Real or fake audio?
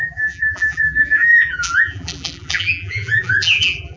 fake